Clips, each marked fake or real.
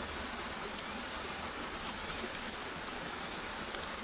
real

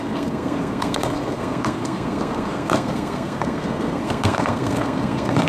fake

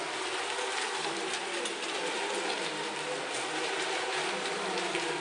real